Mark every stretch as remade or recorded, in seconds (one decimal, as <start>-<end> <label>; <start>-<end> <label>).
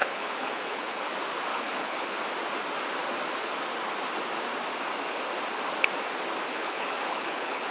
0.0-1.1 remade; 1.1-1.5 recorded; 1.5-2.2 remade; 2.2-6.6 recorded; 6.6-7.7 remade